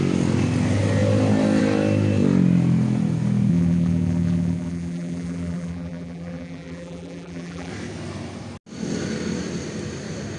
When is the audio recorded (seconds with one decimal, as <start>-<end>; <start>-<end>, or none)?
0.0-3.5; 7.7-10.4